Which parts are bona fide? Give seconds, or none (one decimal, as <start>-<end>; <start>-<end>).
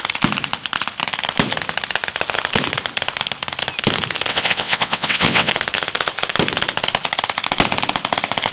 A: 0.0-4.3; 5.5-8.5